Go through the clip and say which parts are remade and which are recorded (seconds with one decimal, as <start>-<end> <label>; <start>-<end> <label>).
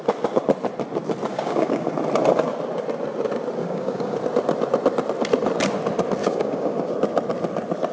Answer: 0.0-1.3 recorded; 1.3-1.9 remade; 1.9-3.6 recorded; 3.6-4.2 remade; 4.2-6.2 recorded; 6.2-6.9 remade; 6.9-7.9 recorded